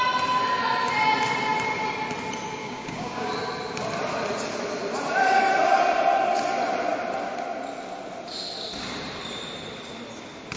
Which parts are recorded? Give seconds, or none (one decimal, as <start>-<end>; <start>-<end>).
0.0-2.6; 3.3-10.6